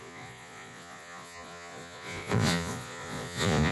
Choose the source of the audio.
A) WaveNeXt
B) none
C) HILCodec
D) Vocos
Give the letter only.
D